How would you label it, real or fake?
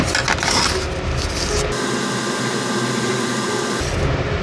real